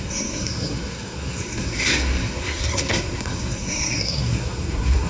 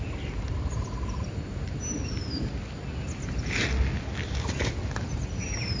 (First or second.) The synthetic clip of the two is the first